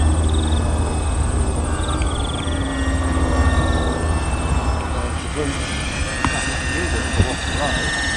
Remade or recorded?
recorded